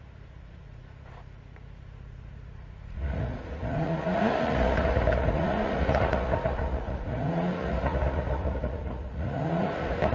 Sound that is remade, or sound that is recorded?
remade